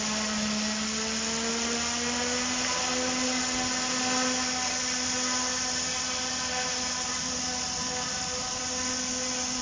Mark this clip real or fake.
real